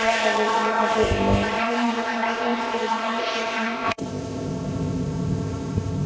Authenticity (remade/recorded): remade